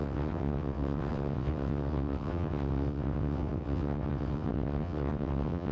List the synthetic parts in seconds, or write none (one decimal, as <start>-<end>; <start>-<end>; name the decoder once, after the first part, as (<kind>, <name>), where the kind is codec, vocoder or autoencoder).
0.0-5.7 (vocoder, WaveNeXt)